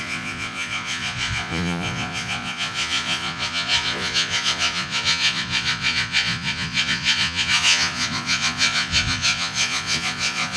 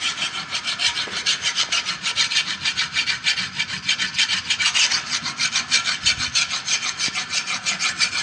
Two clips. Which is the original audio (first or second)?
second